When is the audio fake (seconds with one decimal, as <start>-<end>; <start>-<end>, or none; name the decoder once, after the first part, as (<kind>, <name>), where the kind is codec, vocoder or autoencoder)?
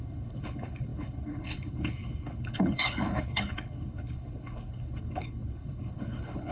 0.0-6.5 (codec, HILCodec)